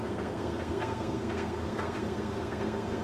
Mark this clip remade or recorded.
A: remade